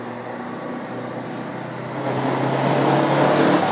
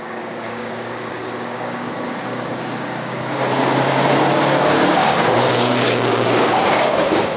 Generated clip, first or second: second